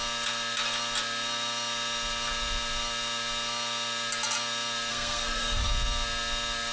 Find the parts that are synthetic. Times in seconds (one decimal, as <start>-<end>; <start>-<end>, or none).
4.9-5.7